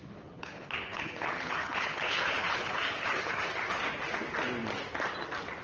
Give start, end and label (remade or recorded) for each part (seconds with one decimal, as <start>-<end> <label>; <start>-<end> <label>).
0.0-3.4 remade; 3.4-5.6 recorded